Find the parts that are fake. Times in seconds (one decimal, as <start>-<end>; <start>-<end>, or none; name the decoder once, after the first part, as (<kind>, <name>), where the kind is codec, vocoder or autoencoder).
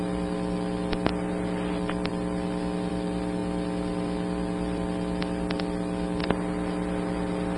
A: 0.0-2.1 (vocoder, BigVGAN v2); 2.9-3.4; 6.2-7.6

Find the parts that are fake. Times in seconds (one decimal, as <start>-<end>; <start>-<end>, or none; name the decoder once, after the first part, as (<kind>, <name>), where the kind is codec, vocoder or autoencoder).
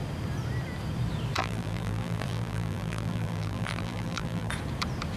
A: 1.4-4.5 (vocoder, BigVGAN v2)